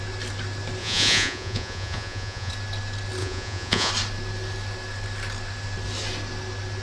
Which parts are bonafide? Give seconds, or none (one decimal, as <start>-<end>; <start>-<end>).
0.0-0.8; 2.5-3.2; 3.9-6.8